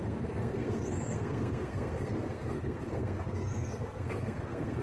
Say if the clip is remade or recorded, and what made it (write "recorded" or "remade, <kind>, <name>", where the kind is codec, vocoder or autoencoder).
remade, codec, SNAC